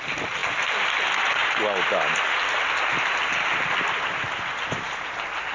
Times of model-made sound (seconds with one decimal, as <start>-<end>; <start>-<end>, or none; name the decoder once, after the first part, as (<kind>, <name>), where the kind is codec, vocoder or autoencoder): none